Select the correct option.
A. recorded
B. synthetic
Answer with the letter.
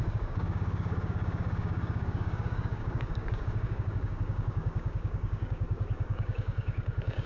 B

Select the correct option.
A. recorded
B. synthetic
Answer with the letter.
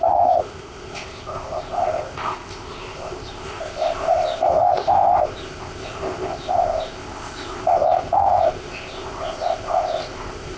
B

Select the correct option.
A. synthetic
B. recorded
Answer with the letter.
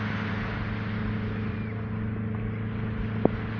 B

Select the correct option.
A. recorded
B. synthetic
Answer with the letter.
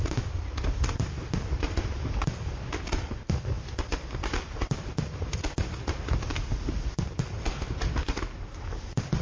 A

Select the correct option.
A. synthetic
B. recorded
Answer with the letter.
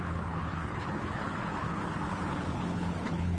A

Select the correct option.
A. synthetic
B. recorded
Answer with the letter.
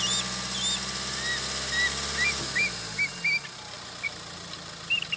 B